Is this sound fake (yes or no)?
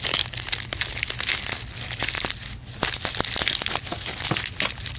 no